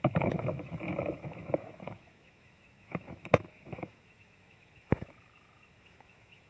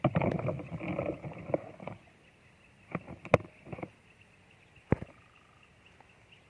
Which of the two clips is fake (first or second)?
first